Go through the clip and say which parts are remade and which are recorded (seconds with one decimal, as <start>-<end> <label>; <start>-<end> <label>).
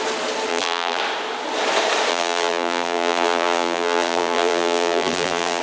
0.0-0.5 recorded; 0.5-1.0 remade; 1.0-2.1 recorded; 2.1-5.6 remade